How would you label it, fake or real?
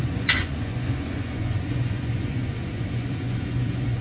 fake